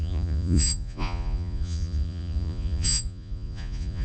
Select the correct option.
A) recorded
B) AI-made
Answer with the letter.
B